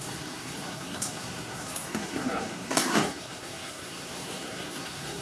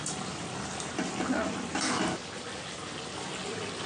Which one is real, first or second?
second